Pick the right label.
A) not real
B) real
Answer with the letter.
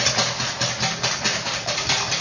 B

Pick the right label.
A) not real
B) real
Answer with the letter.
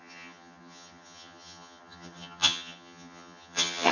A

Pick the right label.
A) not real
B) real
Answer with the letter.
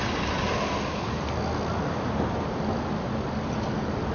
B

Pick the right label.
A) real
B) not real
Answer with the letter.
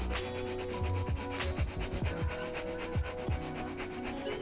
A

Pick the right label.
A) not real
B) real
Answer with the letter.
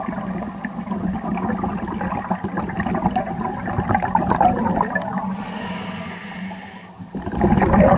B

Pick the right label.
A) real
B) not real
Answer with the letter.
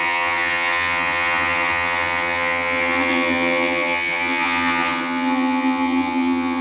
B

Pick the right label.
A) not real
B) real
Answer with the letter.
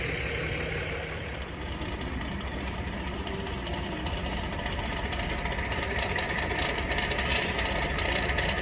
B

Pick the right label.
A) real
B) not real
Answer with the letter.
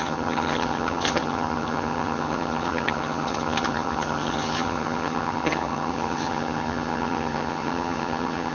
B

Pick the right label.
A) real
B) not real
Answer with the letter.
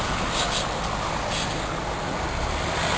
A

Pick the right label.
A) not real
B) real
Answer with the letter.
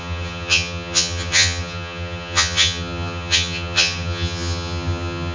A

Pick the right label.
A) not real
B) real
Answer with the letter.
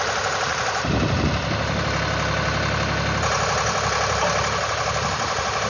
B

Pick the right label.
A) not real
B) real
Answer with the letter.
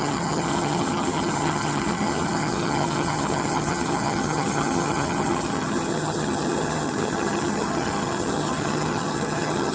A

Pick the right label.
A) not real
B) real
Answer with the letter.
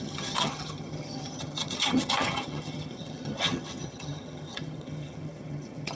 A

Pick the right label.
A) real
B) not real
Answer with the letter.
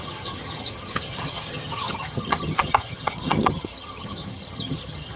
B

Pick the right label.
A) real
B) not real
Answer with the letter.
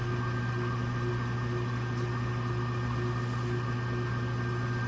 A